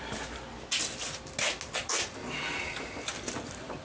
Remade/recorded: recorded